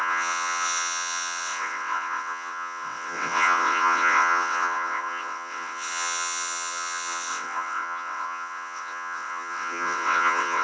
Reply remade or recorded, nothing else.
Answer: remade